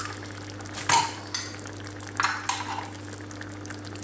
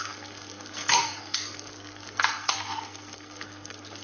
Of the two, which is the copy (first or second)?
second